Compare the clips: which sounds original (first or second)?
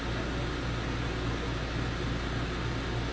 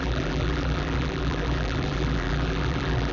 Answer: first